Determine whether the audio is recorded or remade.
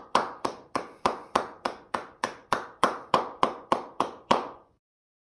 remade